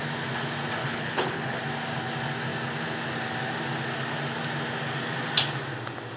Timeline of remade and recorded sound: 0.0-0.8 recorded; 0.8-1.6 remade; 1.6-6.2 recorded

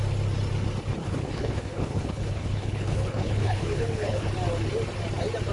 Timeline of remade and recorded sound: 0.0-1.0 recorded; 1.0-4.3 remade; 4.3-5.5 recorded

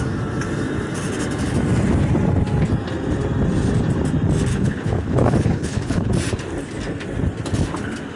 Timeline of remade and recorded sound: 0.0-4.5 recorded; 4.5-6.1 remade; 6.1-8.2 recorded

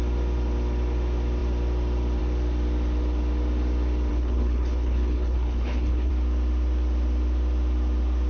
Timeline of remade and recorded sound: 0.0-4.1 recorded; 4.1-6.1 remade; 6.1-8.3 recorded

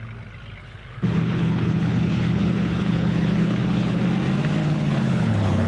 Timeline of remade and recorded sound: 0.0-0.6 recorded; 0.6-4.0 remade; 4.0-4.6 recorded; 4.6-5.7 remade

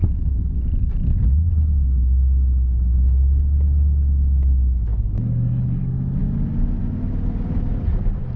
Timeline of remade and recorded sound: 0.0-4.9 recorded; 4.9-5.8 remade; 5.8-8.4 recorded

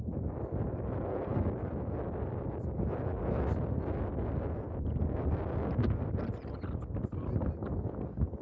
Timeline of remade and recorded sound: 0.0-8.4 recorded